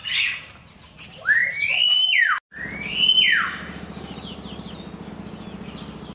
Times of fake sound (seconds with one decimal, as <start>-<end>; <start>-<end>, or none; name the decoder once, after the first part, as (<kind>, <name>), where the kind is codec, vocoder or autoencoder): none